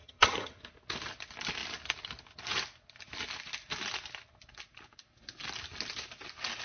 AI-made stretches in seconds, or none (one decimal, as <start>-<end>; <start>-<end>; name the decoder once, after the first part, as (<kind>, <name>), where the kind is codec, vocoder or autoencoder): 0.0-0.6 (vocoder, HiFi-GAN)